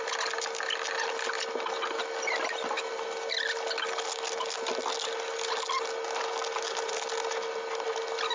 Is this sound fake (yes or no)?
no